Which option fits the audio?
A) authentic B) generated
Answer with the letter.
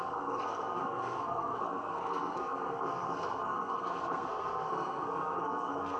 B